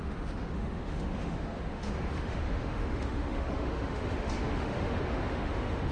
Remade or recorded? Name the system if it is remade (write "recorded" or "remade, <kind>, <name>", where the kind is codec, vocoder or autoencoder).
remade, autoencoder, DAC-VAE